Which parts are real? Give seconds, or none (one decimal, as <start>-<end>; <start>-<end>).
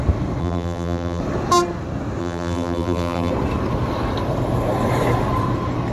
0.0-0.4; 1.2-2.2; 3.3-5.9